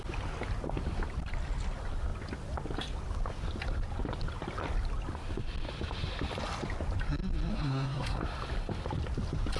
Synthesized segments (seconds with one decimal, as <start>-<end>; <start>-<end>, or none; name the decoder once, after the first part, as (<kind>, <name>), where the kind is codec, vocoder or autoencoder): 7.5-8.2 (codec, SNAC)